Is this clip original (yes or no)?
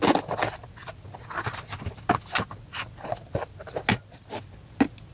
yes